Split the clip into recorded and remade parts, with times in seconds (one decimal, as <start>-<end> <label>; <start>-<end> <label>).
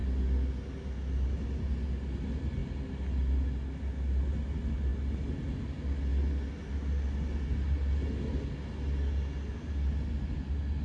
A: 0.0-10.8 recorded